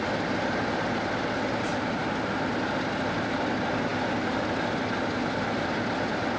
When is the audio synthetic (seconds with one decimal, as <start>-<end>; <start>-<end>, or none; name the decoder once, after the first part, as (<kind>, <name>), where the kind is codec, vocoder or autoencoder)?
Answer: none